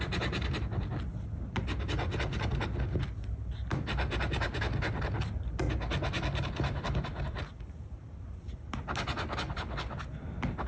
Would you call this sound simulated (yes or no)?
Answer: no